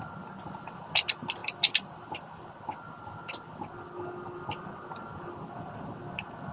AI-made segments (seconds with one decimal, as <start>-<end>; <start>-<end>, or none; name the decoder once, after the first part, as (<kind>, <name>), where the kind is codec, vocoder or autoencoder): none

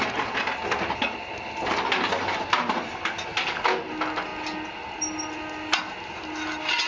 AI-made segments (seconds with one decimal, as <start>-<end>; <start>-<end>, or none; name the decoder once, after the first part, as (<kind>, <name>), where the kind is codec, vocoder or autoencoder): none

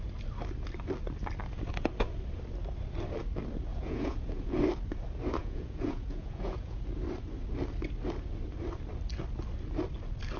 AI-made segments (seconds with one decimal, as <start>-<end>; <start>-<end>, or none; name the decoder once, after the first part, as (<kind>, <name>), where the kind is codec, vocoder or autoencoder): 3.7-4.6 (vocoder, Vocos); 5.4-6.8

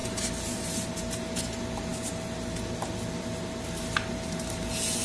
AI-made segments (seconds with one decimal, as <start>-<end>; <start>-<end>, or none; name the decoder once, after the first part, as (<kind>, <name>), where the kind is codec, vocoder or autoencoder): none

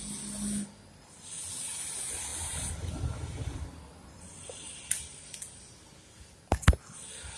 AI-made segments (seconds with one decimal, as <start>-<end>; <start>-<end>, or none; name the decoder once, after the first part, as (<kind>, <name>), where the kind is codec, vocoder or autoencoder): none

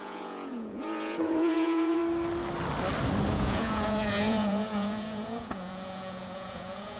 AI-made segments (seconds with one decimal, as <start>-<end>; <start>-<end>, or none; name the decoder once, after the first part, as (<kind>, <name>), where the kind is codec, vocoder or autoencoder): 0.0-2.0 (vocoder, Vocos); 3.3-7.0

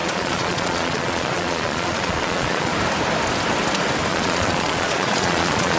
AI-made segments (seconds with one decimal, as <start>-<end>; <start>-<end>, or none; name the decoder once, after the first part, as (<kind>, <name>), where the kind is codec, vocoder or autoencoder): 0.0-2.7 (vocoder, Vocos); 4.1-5.8

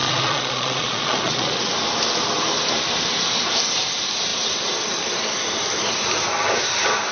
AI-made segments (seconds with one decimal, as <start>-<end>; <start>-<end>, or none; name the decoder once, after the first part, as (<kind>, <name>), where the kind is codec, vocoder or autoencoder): 0.0-1.7 (vocoder, Vocos)